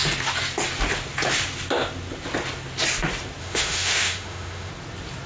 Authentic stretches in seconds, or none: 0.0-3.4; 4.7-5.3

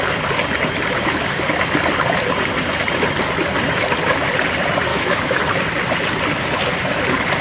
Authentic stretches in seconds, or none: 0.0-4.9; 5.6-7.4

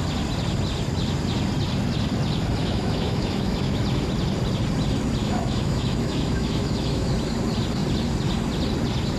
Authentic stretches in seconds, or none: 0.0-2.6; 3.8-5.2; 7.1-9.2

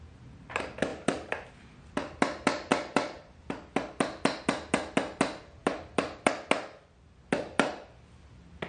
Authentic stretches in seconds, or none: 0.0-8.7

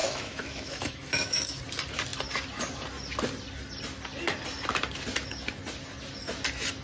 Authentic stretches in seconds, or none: 1.6-6.8

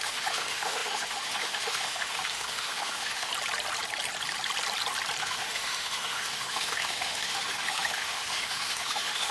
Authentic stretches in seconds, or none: 3.3-5.2

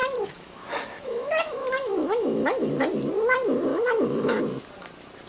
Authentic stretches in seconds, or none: 2.7-3.7; 4.4-5.3